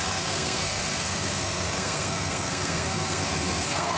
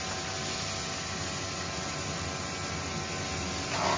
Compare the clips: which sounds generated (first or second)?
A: first